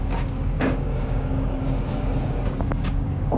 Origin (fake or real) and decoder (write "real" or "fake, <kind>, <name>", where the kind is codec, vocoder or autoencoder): fake, codec, DAC